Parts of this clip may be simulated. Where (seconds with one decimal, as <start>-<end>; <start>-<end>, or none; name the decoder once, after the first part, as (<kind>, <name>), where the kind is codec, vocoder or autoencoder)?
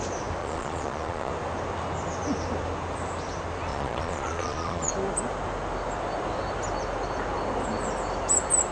0.4-1.3 (vocoder, Vocos); 3.7-4.9